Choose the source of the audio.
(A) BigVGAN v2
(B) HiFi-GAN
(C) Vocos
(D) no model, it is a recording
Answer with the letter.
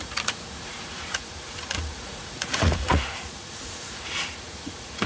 C